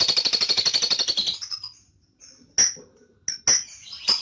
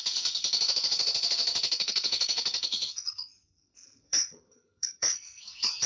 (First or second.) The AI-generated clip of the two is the second